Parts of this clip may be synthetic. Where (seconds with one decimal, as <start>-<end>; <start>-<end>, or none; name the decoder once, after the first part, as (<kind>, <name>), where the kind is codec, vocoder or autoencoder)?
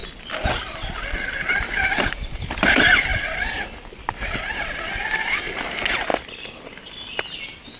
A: none